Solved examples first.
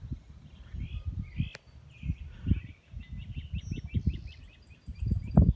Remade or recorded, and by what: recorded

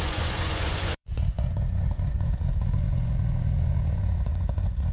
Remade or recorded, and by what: remade, vocoder, Vocos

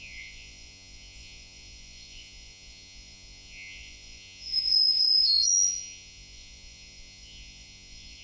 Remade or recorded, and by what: remade, vocoder, Vocos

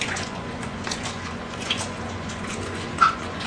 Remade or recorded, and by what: remade, vocoder, Vocos